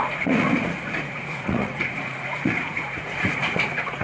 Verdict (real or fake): fake